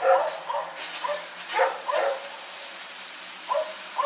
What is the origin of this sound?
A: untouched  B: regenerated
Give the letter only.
A